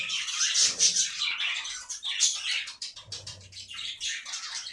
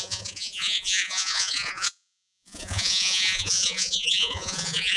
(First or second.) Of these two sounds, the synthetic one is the second